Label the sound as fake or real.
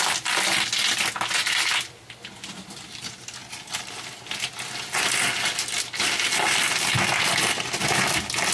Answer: real